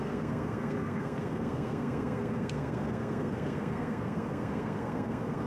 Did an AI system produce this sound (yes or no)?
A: yes